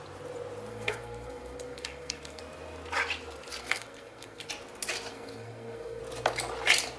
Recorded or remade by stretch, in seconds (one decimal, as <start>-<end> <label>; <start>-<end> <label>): 0.0-0.7 recorded; 0.7-2.4 remade; 2.4-3.6 recorded; 3.6-4.5 remade; 4.5-5.1 recorded; 5.1-6.0 remade; 6.0-7.0 recorded